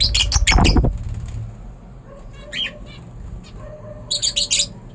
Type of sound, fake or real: real